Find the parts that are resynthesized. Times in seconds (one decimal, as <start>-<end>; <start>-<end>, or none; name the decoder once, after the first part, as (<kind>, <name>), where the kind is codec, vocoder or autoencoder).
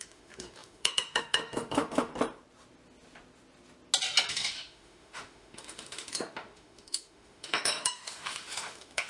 0.0-2.1 (autoencoder, DAC-VAE); 4.3-9.1